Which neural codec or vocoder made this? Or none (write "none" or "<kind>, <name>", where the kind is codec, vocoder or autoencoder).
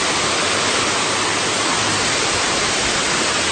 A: none